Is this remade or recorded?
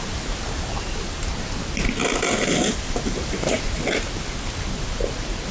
recorded